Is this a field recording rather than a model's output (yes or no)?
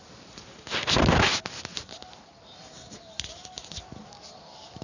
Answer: yes